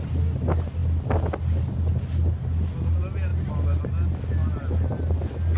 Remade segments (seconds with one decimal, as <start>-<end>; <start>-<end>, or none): none